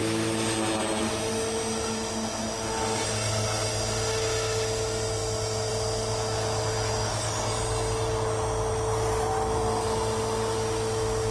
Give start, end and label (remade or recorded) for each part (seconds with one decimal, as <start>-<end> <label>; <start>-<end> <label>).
0.0-11.3 recorded